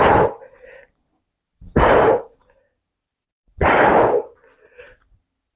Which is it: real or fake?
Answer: real